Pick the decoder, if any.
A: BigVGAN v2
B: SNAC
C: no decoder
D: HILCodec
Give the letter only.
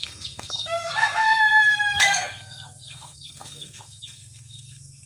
B